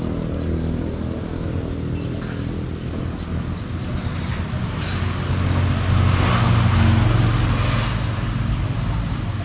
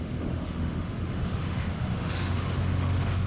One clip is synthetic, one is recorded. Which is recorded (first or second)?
first